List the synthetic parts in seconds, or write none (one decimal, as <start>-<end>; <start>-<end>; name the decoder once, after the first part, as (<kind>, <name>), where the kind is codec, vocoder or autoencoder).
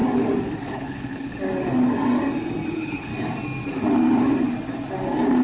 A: 0.7-1.3 (codec, HILCodec); 2.7-3.1